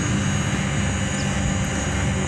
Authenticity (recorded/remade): recorded